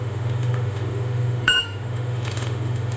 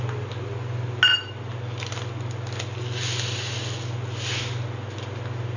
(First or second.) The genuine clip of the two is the second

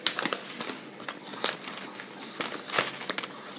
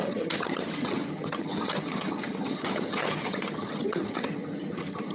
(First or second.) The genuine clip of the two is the first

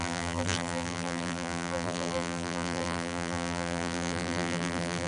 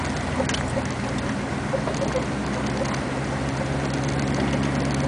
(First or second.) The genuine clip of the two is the second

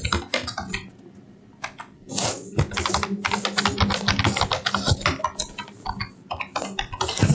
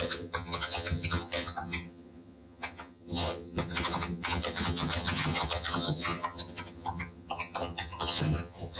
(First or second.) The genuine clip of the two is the first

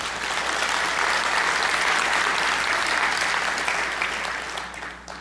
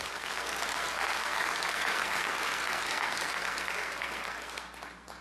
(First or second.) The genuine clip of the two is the first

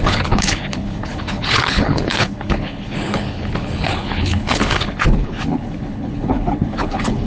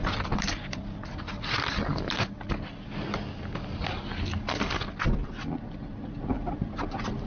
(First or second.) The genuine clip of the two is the second